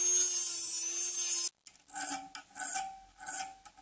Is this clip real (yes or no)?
yes